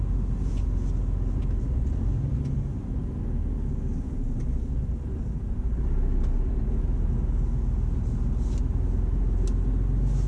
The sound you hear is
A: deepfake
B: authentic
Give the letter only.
B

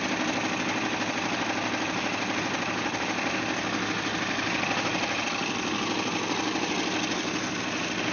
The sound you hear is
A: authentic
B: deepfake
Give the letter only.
A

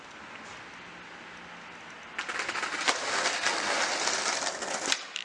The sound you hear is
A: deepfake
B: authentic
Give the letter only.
B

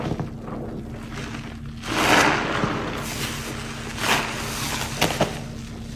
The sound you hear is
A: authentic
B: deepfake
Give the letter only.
A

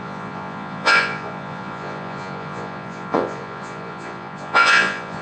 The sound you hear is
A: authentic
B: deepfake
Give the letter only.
B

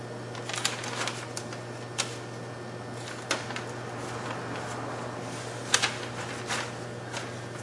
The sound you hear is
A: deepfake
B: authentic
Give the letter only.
B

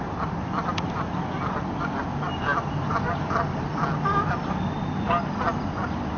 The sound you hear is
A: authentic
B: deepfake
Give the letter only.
A